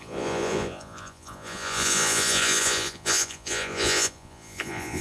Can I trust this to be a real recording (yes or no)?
no